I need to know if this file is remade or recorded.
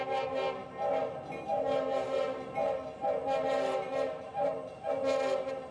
recorded